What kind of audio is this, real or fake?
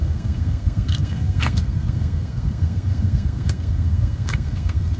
fake